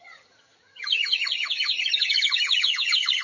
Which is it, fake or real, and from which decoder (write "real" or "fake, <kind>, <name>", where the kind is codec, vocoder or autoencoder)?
fake, vocoder, HiFi-GAN